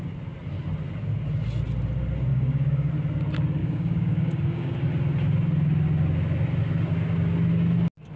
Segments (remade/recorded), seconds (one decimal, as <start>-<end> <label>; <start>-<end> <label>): 0.0-2.3 recorded; 2.3-2.9 remade; 2.9-3.6 recorded; 3.6-4.7 remade; 4.7-8.2 recorded